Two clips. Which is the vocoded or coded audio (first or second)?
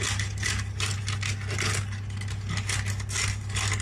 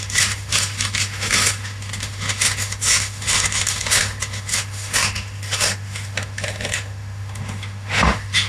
second